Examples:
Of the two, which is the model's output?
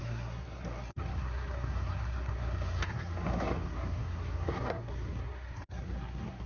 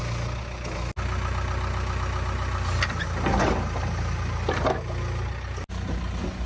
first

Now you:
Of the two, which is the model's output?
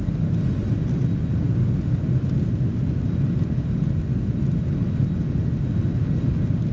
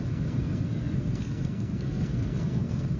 second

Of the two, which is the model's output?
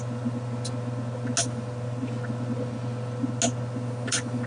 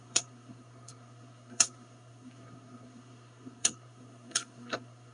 second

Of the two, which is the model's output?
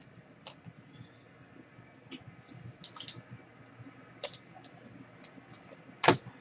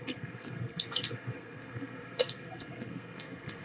second